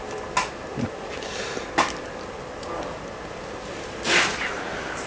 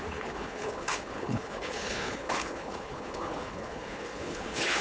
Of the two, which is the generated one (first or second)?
second